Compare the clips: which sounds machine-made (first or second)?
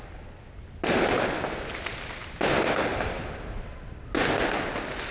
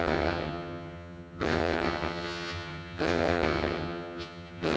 second